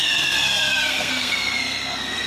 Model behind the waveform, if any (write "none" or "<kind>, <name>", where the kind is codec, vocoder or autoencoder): codec, SNAC